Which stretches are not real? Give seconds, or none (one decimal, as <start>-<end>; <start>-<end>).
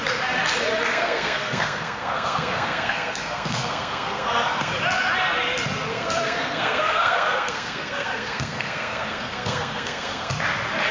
0.9-4.7; 5.9-10.3